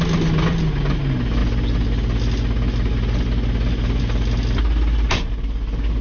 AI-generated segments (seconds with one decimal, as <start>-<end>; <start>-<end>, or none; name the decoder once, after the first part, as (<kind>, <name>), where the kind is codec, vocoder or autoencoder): none